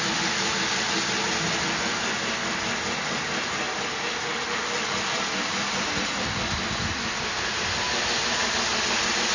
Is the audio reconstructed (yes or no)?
no